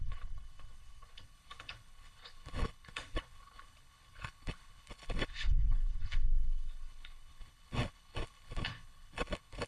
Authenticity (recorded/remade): remade